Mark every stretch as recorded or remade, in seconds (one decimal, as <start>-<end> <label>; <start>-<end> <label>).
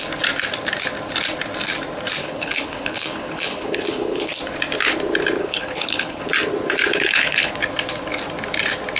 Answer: 0.0-2.2 recorded; 2.2-4.3 remade; 4.3-5.4 recorded; 5.4-6.2 remade; 6.2-6.9 recorded; 6.9-7.5 remade; 7.5-9.0 recorded